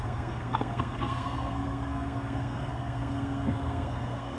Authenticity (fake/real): fake